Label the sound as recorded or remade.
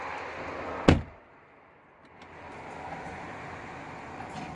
recorded